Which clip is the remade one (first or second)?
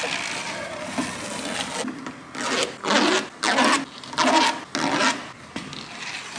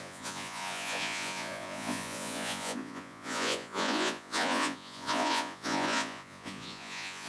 second